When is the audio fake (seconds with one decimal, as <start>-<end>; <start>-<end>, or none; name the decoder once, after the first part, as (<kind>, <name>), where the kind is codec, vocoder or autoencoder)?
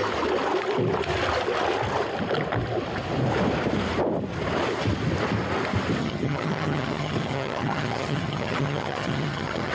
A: 6.0-9.7 (vocoder, HiFi-GAN)